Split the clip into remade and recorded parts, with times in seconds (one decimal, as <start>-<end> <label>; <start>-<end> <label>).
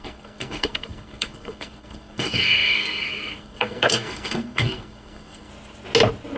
0.0-5.5 remade; 5.5-6.4 recorded